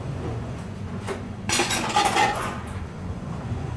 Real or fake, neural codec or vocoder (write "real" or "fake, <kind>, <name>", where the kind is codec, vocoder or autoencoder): fake, vocoder, Vocos